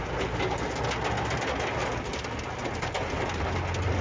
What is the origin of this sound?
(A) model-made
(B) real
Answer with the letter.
B